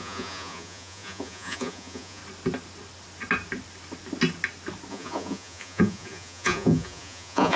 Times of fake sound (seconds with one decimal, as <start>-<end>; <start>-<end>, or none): 0.0-2.2; 4.9-7.6